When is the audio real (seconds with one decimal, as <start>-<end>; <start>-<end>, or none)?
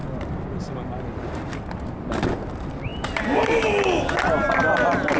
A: 0.0-2.9; 3.7-5.2